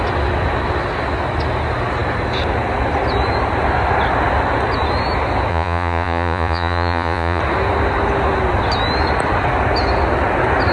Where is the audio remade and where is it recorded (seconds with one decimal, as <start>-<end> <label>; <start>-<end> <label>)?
0.0-5.5 recorded; 5.5-7.4 remade; 7.4-10.7 recorded